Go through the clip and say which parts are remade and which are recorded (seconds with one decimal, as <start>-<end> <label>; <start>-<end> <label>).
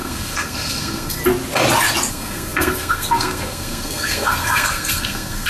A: 0.0-1.2 remade; 1.2-2.1 recorded; 2.1-5.5 remade